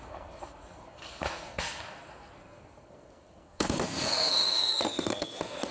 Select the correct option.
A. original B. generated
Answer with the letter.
B